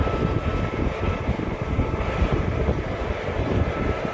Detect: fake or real real